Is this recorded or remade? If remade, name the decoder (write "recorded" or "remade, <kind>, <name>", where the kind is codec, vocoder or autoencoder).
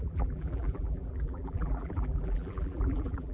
remade, vocoder, BigVGAN v2